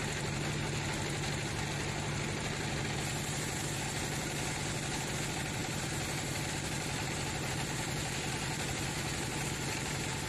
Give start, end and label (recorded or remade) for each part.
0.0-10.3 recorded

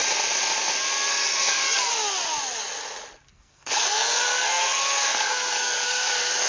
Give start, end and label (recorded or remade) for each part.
0.0-1.1 recorded; 1.1-1.9 remade; 1.9-3.3 recorded; 3.3-6.5 remade

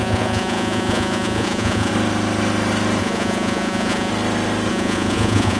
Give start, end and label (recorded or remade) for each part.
0.0-1.9 remade; 1.9-3.0 recorded; 3.0-4.1 remade; 4.1-4.7 recorded; 4.7-5.6 remade

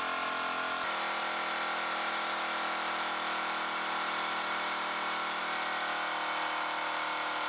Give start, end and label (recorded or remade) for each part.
0.0-7.5 recorded

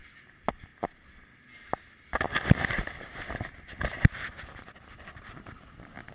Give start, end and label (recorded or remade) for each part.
0.0-6.1 recorded

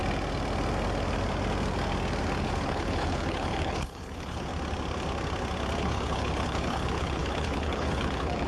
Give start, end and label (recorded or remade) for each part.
0.0-2.4 recorded; 2.4-4.5 remade; 4.5-5.8 recorded; 5.8-8.5 remade